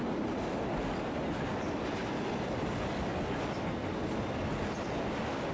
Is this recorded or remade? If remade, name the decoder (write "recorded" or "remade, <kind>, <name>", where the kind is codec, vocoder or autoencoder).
recorded